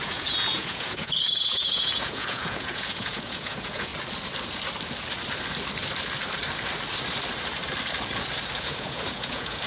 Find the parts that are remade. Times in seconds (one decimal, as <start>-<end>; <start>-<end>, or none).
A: 0.0-3.9; 8.6-9.7